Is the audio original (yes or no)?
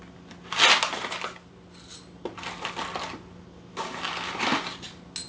yes